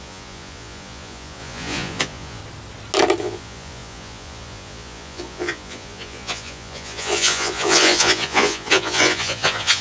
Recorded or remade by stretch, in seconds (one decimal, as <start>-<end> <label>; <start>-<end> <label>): 0.0-2.4 remade; 2.4-3.2 recorded; 3.2-9.8 remade